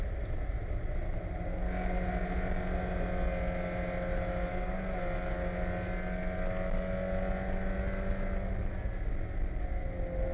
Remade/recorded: recorded